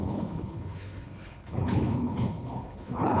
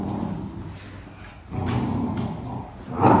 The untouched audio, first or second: second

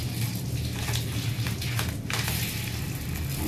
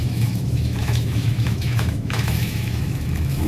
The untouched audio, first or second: first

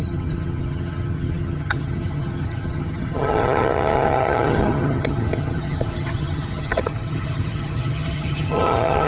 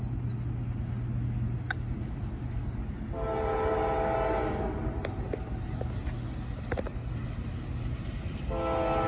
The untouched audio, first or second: second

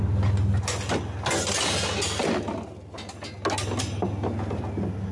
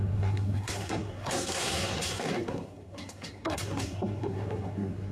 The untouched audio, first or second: first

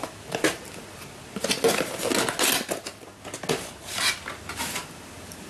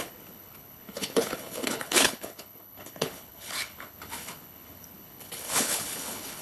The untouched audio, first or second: first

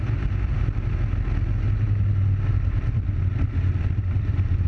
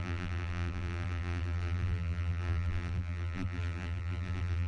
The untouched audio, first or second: first